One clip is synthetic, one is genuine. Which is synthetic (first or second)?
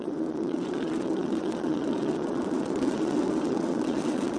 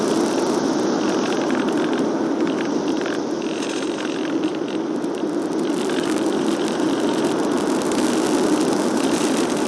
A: first